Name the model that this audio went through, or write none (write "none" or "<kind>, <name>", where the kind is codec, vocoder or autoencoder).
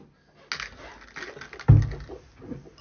none